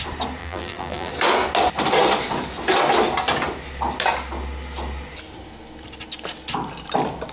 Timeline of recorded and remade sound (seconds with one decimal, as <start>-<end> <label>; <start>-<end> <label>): 0.0-0.4 recorded; 0.4-1.1 remade; 1.1-7.3 recorded